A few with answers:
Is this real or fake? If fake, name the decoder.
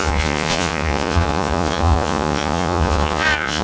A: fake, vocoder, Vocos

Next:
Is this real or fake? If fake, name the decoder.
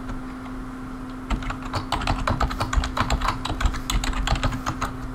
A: real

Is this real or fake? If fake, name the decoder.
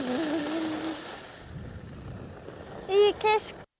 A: real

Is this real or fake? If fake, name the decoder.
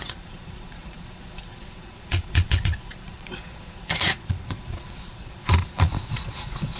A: fake, vocoder, Vocos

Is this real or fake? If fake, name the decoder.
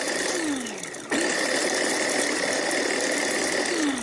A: real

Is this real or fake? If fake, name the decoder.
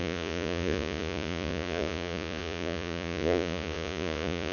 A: fake, vocoder, Vocos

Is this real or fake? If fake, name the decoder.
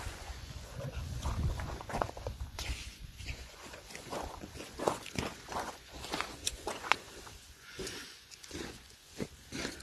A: fake, vocoder, Vocos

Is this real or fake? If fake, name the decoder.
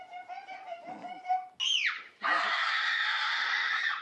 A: real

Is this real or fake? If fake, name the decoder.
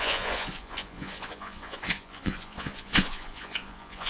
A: fake, vocoder, Vocos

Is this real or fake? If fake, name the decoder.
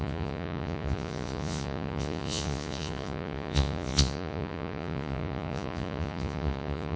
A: fake, vocoder, Vocos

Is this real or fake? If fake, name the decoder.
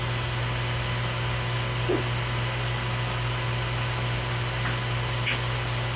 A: real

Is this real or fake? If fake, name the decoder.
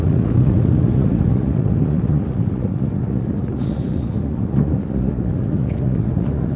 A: fake, vocoder, Vocos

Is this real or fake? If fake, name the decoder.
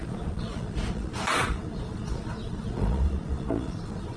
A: fake, vocoder, Vocos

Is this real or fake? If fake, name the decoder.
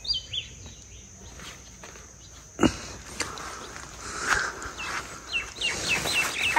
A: real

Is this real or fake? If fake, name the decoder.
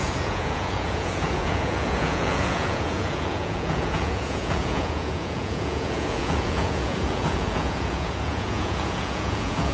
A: fake, vocoder, Vocos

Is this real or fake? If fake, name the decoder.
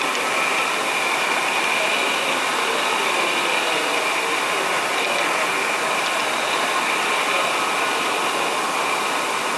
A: real